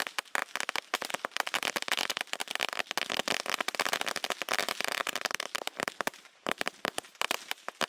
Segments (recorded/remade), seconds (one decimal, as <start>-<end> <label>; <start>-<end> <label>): 0.0-4.6 recorded; 4.6-7.0 remade; 7.0-7.9 recorded